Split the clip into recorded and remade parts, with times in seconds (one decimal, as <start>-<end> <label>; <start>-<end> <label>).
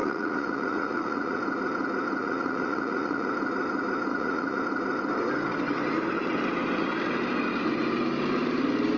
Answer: 0.0-1.4 remade; 1.4-2.2 recorded; 2.2-3.3 remade; 3.3-4.1 recorded; 4.1-4.6 remade; 4.6-9.0 recorded